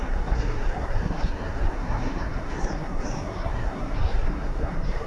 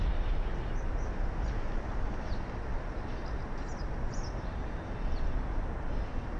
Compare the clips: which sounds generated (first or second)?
first